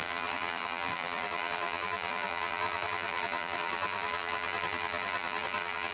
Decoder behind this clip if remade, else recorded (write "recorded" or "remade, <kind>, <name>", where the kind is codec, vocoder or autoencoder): remade, vocoder, BigVGAN v2